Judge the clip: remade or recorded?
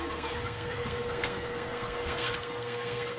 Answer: remade